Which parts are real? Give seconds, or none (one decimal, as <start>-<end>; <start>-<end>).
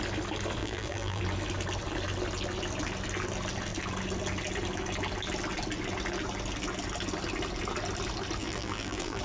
0.0-0.6; 1.2-8.4